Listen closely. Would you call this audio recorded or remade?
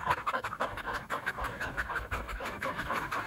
remade